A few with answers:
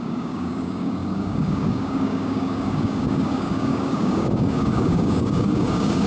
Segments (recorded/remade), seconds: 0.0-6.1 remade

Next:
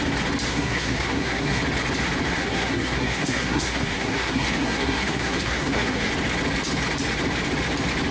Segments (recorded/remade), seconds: 0.0-0.5 recorded; 0.5-1.6 remade; 1.6-2.3 recorded; 2.3-6.1 remade; 6.1-8.1 recorded